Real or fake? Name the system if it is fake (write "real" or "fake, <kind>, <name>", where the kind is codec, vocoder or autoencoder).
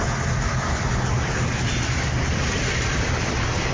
real